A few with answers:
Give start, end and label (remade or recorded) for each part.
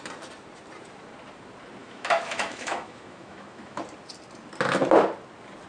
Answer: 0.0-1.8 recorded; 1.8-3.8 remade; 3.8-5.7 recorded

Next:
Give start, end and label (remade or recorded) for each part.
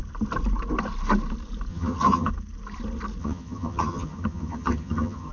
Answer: 0.0-1.7 recorded; 1.7-2.3 remade; 2.3-3.2 recorded; 3.2-5.3 remade